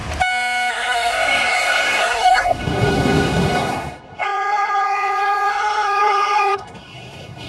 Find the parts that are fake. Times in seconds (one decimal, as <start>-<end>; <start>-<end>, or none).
0.7-7.5